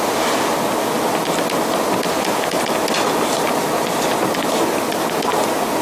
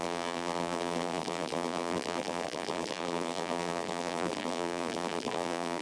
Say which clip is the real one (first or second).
first